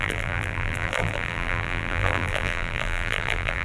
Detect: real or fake fake